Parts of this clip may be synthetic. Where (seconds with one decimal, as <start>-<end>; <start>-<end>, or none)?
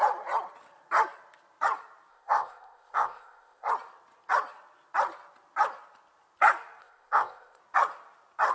2.1-3.7; 6.8-7.6